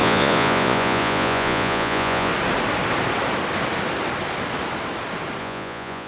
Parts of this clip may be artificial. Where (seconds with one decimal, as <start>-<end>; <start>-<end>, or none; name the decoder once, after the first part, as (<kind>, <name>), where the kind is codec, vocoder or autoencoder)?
0.0-2.3 (vocoder, Vocos); 5.4-6.1